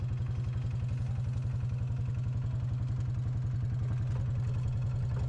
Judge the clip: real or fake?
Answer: real